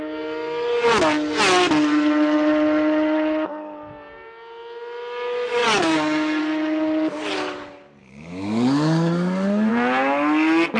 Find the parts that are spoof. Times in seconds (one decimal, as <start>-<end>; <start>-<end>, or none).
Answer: 5.6-6.4; 8.0-9.7